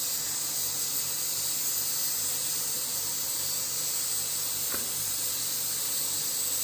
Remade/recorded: recorded